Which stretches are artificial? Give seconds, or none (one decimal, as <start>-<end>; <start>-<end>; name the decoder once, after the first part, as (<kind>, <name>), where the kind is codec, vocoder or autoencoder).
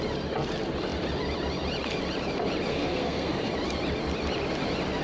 2.7-3.5 (codec, SNAC)